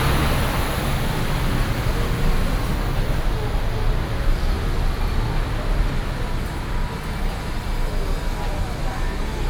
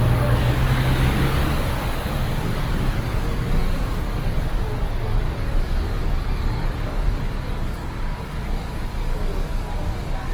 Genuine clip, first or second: first